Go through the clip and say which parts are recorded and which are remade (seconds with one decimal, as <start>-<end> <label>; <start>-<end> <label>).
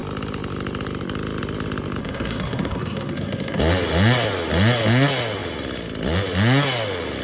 0.0-2.0 recorded; 2.0-3.6 remade; 3.6-7.2 recorded